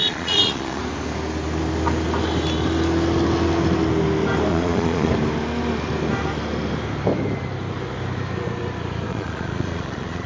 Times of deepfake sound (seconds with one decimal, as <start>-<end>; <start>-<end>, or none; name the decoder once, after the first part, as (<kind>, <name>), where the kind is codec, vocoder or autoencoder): 0.0-0.8 (vocoder, Vocos); 4.5-5.1; 9.1-10.3